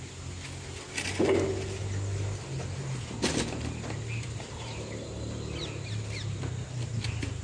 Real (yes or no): yes